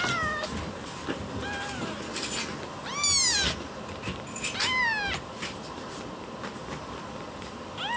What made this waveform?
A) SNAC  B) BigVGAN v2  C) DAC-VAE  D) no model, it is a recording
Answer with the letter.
D